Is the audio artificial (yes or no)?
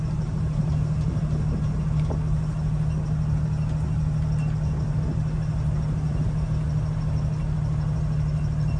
no